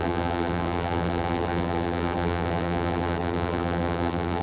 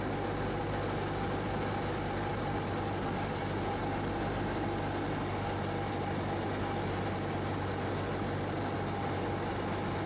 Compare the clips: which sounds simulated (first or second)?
first